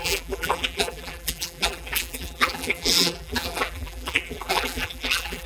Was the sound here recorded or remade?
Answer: remade